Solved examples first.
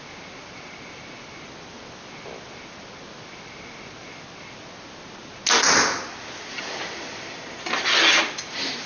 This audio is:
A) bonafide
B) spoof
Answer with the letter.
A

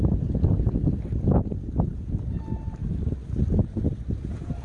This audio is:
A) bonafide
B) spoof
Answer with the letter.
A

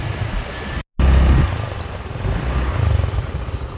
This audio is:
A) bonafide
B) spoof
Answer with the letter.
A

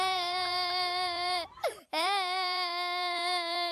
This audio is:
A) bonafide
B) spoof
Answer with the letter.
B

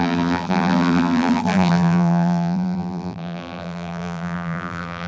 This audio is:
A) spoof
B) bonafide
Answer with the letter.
A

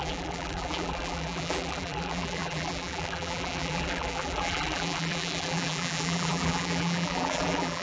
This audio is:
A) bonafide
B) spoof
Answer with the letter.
B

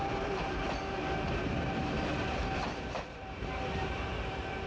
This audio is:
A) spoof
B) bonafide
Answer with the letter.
A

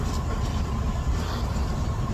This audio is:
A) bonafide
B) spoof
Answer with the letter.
B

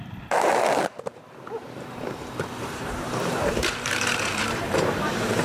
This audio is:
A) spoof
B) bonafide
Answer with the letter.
A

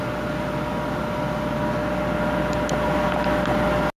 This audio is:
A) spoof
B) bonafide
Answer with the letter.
B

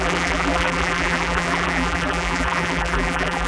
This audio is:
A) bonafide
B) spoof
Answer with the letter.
B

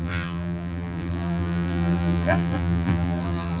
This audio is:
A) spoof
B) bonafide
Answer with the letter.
A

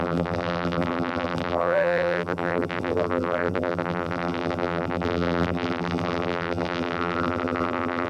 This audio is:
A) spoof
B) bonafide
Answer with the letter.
A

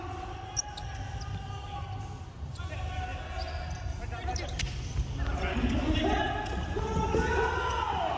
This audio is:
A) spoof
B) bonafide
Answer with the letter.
B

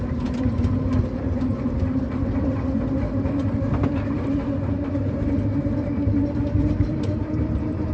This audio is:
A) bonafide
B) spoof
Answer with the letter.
B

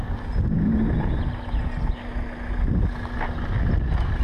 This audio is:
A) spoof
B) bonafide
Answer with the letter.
B